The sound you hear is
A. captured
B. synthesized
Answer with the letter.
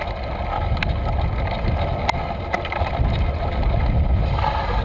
A